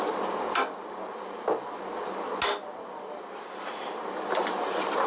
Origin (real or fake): real